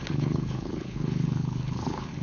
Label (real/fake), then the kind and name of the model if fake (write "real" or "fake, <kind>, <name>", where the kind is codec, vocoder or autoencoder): fake, codec, HILCodec